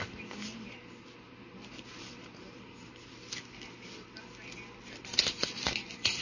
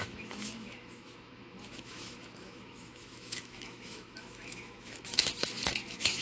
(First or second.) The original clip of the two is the first